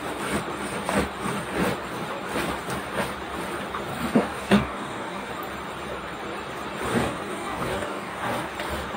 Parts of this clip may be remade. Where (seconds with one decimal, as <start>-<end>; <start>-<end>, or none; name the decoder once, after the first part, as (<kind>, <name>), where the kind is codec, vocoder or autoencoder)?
3.9-5.3 (codec, DAC); 6.9-8.5